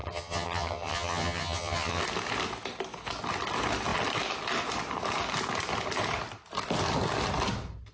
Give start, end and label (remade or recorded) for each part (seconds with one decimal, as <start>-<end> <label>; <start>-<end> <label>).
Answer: 0.0-2.0 remade; 2.0-7.9 recorded